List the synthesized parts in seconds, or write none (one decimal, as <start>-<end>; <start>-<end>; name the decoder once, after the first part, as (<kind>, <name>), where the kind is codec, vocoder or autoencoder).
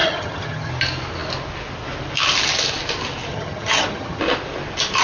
0.0-0.7 (vocoder, HiFi-GAN); 3.3-4.2